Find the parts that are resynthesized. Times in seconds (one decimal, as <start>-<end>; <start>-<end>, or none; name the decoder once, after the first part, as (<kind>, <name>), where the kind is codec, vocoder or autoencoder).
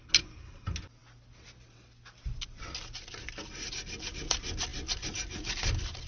none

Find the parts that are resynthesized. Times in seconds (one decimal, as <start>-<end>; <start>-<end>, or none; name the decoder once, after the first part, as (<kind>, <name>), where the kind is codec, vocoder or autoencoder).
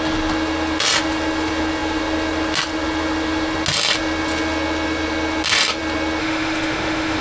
6.2-7.2 (autoencoder, DAC-VAE)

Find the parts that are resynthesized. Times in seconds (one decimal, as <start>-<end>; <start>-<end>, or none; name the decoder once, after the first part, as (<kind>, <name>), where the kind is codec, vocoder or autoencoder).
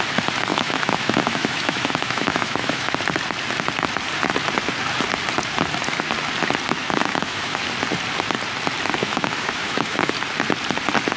0.5-2.9 (autoencoder, DAC-VAE); 6.8-7.6; 9.0-10.1